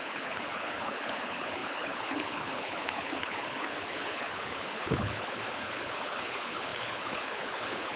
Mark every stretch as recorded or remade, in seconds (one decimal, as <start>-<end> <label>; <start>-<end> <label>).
0.0-8.0 remade